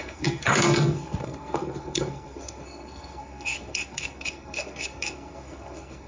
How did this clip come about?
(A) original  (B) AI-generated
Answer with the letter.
B